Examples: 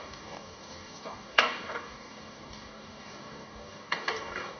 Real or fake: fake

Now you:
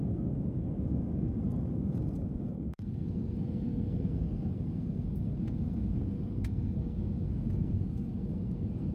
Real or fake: fake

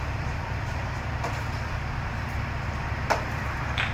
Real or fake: fake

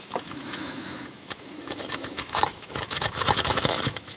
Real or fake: fake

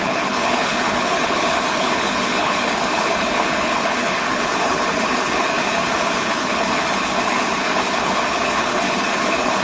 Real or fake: fake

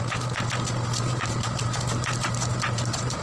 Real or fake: real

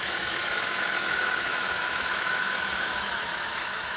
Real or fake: fake